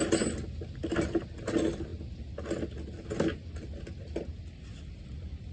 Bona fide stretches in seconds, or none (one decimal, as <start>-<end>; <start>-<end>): 0.0-5.5